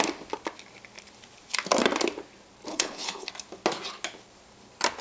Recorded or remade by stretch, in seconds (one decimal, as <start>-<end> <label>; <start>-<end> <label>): 0.0-2.7 recorded; 2.7-3.3 remade; 3.3-5.0 recorded